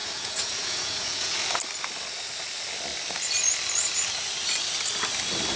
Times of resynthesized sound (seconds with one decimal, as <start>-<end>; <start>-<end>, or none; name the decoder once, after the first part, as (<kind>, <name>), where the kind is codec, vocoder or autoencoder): 0.0-1.5 (vocoder, Vocos)